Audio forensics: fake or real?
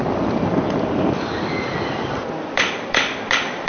fake